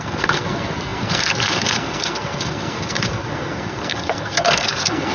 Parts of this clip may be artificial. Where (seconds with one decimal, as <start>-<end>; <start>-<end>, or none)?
0.0-5.1